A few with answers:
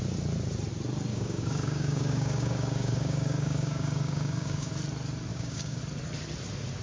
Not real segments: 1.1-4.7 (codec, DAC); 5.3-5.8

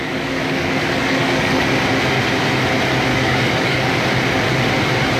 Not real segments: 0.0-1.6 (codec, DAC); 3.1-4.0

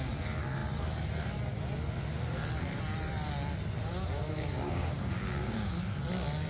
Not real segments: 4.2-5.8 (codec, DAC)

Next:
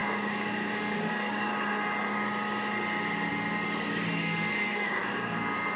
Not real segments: 0.0-1.5 (codec, DAC); 3.3-5.8